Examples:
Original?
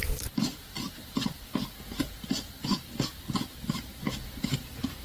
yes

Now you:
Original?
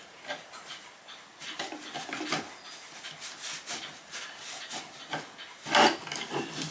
yes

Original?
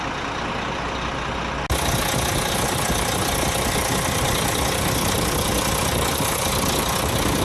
yes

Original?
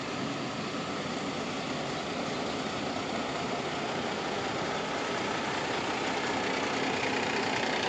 yes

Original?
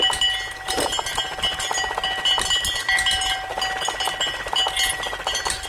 yes